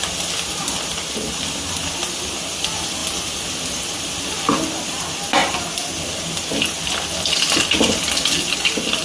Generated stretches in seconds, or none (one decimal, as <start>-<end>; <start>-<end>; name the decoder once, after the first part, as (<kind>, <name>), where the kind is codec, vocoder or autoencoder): none